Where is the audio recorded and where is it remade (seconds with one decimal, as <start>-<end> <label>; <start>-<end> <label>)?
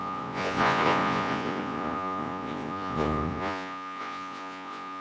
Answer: 0.0-5.0 remade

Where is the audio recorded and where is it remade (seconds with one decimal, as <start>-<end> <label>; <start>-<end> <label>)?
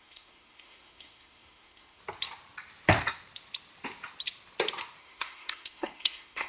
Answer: 0.0-2.0 remade; 2.0-5.0 recorded; 5.0-6.5 remade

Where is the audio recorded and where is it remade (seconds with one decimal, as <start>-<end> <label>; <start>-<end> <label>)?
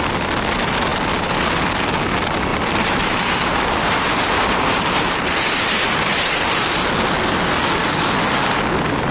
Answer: 0.0-2.5 recorded; 2.5-6.5 remade; 6.5-9.1 recorded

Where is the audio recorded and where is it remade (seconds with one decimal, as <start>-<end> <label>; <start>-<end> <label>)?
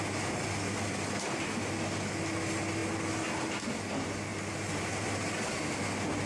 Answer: 0.0-6.3 recorded